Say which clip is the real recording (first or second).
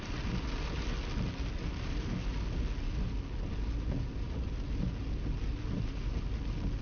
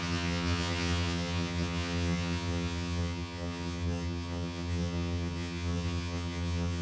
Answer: first